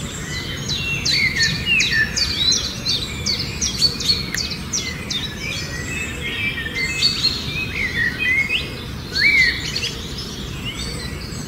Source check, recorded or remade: recorded